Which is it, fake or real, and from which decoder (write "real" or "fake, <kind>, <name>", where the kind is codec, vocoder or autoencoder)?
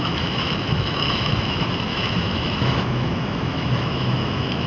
fake, autoencoder, DAC-VAE